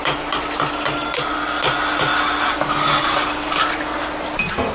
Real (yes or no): yes